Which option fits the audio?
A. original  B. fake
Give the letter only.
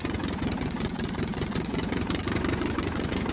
B